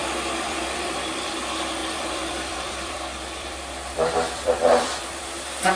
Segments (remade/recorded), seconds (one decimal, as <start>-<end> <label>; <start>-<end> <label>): 0.0-1.4 remade; 1.4-1.8 recorded; 1.8-5.2 remade; 5.2-5.8 recorded